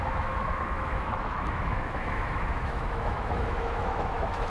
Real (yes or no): no